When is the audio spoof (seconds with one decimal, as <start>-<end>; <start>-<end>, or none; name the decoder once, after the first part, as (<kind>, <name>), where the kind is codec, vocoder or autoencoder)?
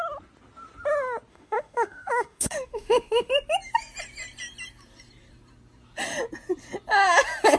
1.3-3.3 (autoencoder, DAC-VAE)